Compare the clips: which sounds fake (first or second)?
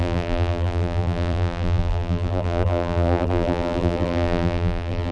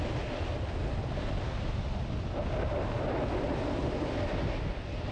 first